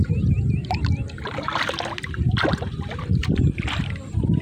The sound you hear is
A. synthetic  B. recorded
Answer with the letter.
B